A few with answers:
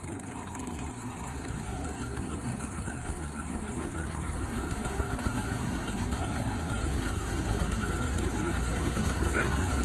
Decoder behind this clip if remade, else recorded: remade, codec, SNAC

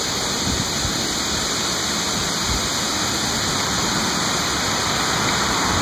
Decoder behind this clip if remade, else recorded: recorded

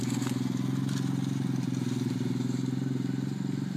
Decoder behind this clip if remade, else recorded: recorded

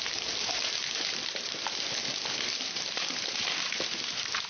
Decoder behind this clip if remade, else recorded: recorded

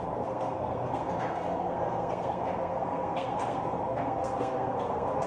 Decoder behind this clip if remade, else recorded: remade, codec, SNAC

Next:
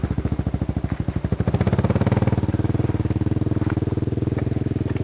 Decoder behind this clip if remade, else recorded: recorded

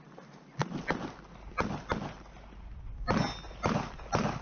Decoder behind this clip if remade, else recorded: recorded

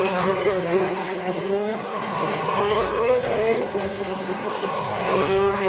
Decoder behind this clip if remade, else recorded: remade, codec, SNAC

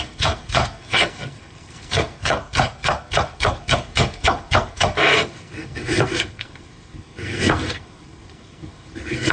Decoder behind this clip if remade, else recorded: remade, codec, SNAC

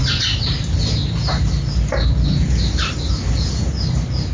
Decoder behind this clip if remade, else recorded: recorded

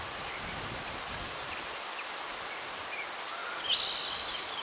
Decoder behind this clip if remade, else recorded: recorded